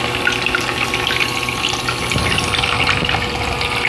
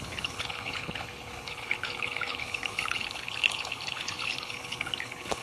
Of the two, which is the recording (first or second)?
first